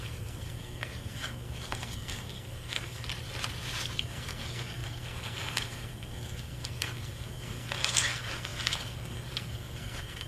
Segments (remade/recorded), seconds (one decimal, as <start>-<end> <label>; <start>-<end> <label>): 0.0-3.1 remade; 3.1-4.0 recorded; 4.0-10.3 remade